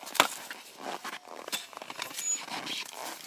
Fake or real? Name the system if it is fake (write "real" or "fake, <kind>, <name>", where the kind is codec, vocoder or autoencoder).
real